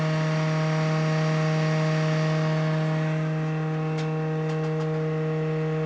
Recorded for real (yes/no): yes